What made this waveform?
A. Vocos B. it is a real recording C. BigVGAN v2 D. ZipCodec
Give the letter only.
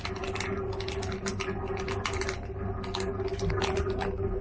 B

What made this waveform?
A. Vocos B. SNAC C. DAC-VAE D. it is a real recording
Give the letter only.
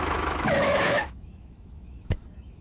C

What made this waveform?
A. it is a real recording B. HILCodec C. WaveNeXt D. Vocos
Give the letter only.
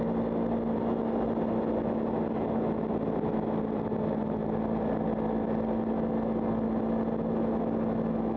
A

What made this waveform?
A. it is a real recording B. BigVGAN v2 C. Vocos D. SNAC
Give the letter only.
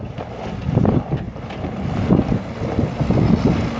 A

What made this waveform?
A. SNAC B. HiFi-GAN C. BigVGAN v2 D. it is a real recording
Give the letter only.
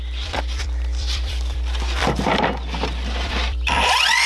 C